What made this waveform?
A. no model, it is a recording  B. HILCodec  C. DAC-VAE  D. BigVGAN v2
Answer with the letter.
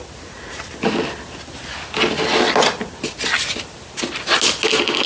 A